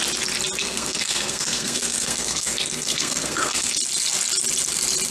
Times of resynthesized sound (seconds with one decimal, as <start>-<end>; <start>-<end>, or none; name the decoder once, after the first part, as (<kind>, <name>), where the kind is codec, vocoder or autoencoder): 0.6-3.7 (codec, SNAC)